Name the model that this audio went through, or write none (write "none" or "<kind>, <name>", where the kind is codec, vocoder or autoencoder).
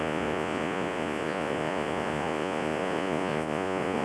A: vocoder, Vocos